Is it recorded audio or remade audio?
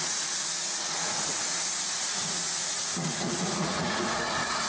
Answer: remade